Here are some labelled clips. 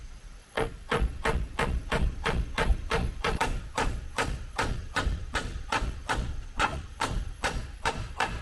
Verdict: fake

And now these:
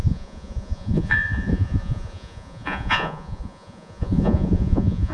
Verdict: fake